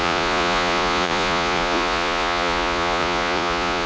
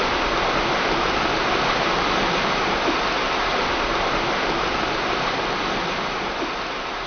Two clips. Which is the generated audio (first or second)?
first